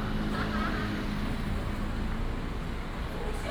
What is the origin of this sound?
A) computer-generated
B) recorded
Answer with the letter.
B